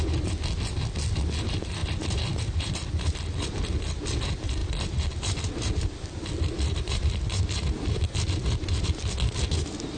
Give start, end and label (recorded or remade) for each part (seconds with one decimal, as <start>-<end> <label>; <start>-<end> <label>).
0.0-1.8 recorded; 1.8-3.8 remade; 3.8-4.6 recorded; 4.6-7.6 remade; 7.6-10.0 recorded